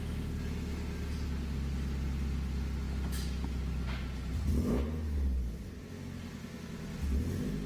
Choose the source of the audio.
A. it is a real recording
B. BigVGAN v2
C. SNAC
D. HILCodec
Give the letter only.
A